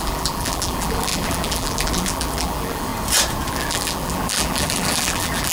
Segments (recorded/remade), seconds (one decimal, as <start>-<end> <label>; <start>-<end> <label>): 0.0-2.9 remade; 2.9-3.5 recorded; 3.5-5.5 remade